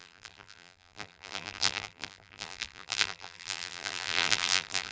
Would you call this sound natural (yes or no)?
no